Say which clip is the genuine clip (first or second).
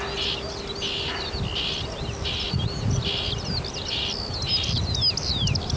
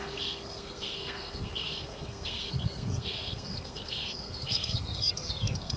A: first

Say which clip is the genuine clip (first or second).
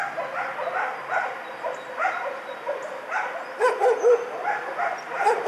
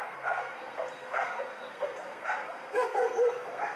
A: first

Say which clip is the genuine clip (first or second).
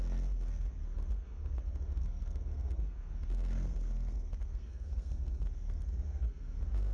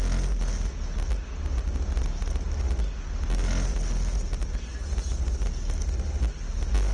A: second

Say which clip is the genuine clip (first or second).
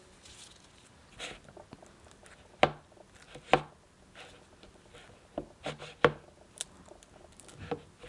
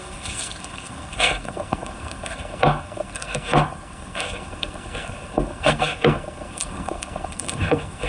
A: first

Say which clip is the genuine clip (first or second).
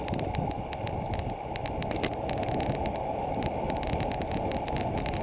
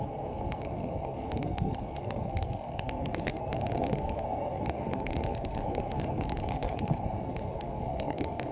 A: first